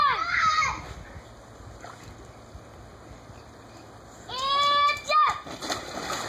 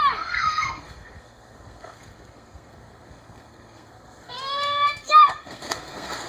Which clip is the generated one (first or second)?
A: second